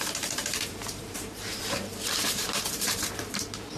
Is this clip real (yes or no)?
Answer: no